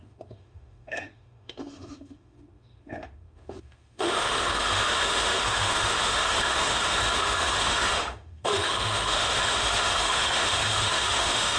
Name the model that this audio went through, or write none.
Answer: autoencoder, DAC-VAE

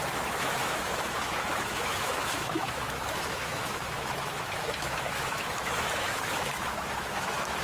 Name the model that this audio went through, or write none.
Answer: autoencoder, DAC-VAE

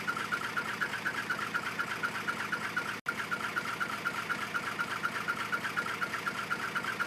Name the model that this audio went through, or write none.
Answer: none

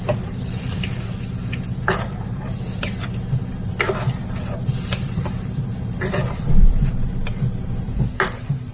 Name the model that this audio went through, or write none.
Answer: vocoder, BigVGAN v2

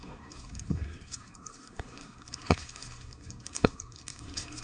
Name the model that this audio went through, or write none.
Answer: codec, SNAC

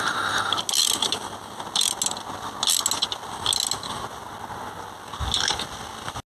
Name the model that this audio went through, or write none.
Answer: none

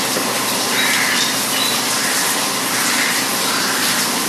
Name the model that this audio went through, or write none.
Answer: none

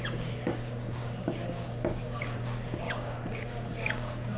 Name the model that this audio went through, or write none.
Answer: codec, DAC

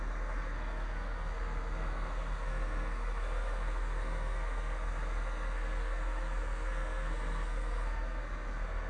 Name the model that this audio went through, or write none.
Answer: codec, SNAC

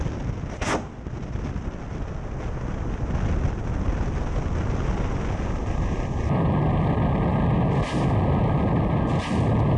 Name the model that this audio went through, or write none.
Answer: none